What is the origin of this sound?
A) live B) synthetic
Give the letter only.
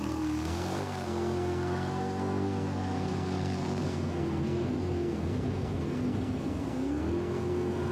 B